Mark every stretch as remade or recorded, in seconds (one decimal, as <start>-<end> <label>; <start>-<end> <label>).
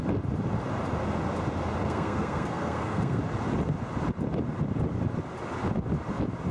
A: 0.0-1.8 recorded; 1.8-3.2 remade; 3.2-6.5 recorded